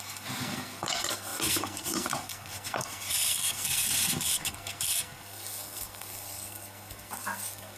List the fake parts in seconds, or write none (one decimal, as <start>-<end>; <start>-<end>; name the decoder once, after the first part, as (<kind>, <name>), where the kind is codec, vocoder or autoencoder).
0.0-7.8 (codec, SNAC)